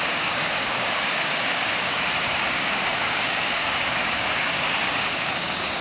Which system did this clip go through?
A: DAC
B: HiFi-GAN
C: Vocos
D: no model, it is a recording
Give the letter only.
A